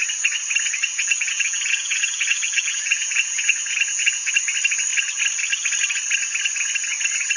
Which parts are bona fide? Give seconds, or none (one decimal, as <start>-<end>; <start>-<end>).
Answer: 0.0-0.9; 4.3-7.4